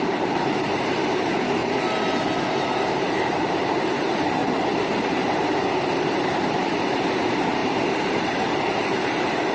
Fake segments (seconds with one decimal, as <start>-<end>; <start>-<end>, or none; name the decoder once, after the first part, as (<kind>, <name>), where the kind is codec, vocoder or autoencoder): 0.0-1.6 (vocoder, BigVGAN v2); 2.4-4.4; 5.9-9.5